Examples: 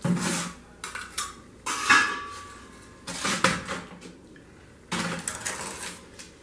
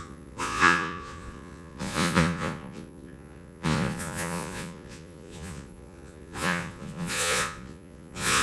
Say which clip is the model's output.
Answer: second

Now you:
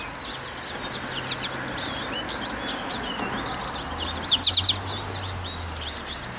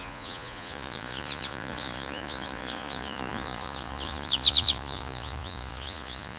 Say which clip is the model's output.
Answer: second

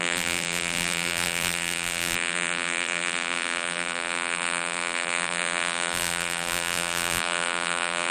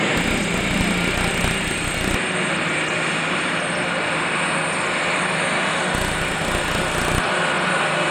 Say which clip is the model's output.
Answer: first